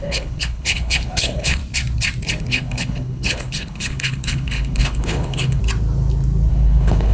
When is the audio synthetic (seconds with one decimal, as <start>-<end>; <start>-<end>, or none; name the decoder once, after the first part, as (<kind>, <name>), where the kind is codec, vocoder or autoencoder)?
0.0-1.6 (codec, HILCodec); 2.4-5.6; 6.5-7.1